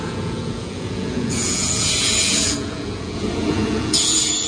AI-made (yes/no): yes